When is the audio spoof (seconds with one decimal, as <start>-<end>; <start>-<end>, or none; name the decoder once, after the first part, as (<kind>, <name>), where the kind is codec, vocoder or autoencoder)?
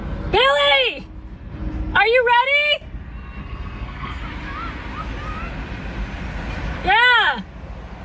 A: 3.4-4.2 (codec, SNAC)